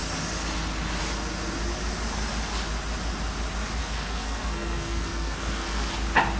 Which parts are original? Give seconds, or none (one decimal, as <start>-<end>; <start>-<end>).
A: 0.0-3.8; 5.9-6.4